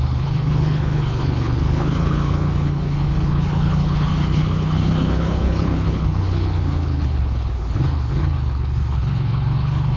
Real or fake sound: fake